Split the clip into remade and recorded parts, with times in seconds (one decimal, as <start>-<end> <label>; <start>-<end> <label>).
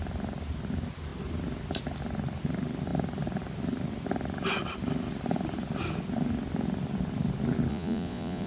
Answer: 0.0-7.7 recorded; 7.7-8.5 remade